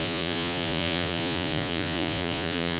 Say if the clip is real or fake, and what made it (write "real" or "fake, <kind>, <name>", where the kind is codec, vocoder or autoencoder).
fake, vocoder, Vocos